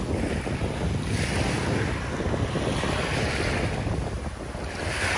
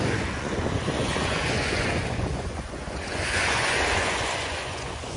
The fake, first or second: second